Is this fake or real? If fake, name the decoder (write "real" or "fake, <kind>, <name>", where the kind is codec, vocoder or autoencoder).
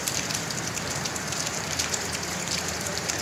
fake, vocoder, BigVGAN v2